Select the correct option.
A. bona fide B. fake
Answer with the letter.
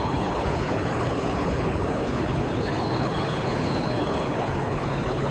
B